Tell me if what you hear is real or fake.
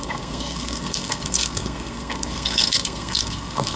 fake